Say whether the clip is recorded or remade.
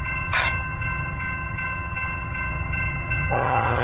remade